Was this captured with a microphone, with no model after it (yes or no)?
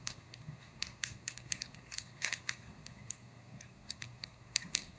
no